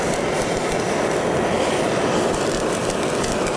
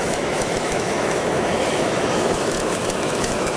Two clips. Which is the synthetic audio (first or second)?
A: second